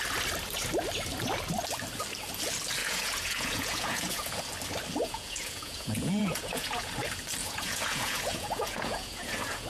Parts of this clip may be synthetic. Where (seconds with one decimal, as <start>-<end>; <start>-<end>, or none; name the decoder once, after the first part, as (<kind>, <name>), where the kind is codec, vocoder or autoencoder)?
2.8-4.4 (vocoder, Vocos); 5.0-6.9; 7.4-9.7